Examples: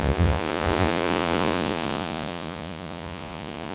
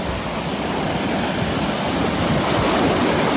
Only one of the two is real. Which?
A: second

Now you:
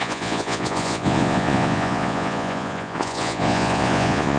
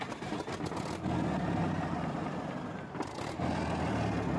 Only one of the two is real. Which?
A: second